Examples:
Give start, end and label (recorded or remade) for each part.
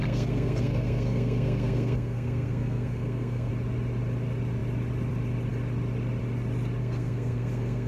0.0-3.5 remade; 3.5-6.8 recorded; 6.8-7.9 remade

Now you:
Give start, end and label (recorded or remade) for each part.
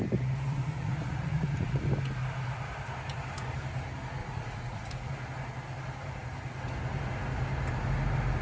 0.0-0.5 recorded; 0.5-1.8 remade; 1.8-4.2 recorded; 4.2-5.1 remade; 5.1-8.4 recorded